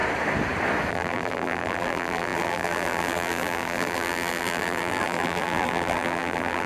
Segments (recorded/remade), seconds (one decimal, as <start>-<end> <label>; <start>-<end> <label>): 0.0-0.9 recorded; 0.9-6.7 remade